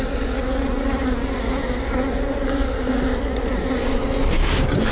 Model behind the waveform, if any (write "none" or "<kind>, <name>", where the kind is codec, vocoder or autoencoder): none